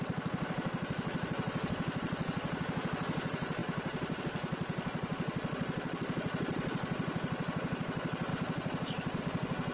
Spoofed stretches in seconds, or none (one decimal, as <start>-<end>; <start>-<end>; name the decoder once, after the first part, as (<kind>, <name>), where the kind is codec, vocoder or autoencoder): 3.6-4.2 (vocoder, BigVGAN v2); 8.3-9.2